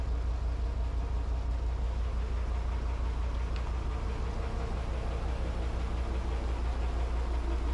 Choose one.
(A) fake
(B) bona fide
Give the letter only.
B